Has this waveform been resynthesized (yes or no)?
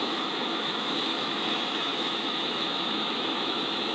yes